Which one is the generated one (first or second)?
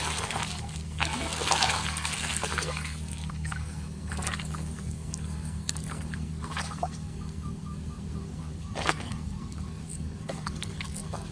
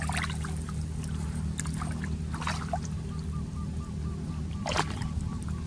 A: first